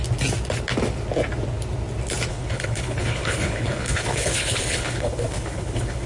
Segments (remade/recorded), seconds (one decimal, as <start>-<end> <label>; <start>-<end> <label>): 0.0-2.3 recorded; 2.3-6.1 remade